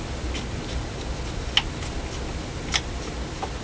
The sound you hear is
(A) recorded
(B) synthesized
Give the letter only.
A